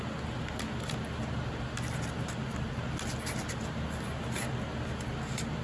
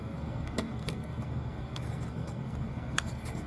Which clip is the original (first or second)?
first